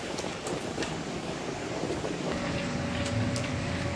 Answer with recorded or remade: remade